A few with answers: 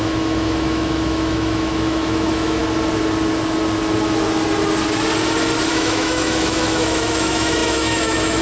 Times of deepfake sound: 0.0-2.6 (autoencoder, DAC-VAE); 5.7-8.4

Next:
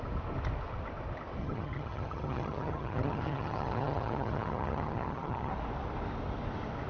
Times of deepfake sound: 1.4-5.5 (vocoder, HiFi-GAN)

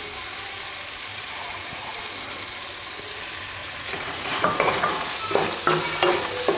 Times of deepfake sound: 1.1-2.0 (vocoder, Vocos); 3.6-5.2

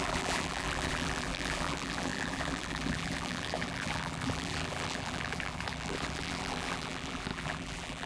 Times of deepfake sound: 0.0-8.1 (vocoder, BigVGAN v2)